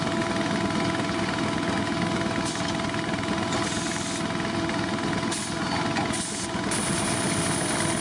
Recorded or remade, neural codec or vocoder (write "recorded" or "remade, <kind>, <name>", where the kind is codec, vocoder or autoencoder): recorded